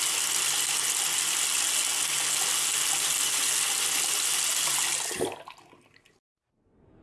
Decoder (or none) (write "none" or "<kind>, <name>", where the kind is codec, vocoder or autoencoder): none